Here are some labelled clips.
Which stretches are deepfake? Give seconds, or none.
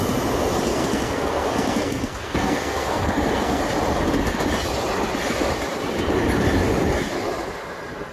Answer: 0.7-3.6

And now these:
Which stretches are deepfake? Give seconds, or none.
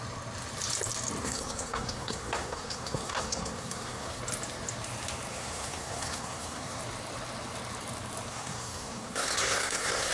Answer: 1.2-4.2; 5.3-6.8; 8.3-10.1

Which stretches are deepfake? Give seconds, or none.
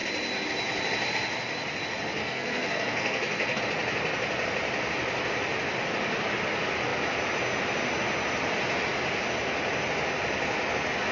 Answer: 2.2-3.6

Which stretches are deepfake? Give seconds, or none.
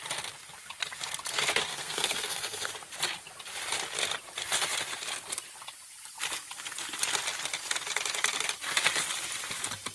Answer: 1.7-2.7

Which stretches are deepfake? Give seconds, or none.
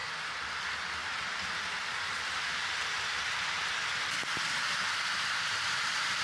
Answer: none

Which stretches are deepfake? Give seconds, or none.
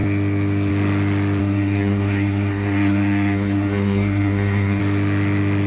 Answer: 1.4-4.8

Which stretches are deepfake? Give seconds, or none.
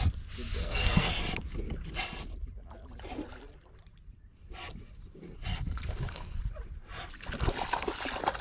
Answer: 0.6-1.2; 5.5-6.4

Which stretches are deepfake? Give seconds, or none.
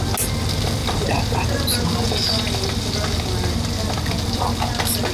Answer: none